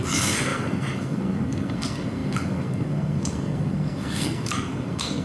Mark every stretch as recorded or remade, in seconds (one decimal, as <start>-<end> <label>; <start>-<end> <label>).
0.0-5.2 remade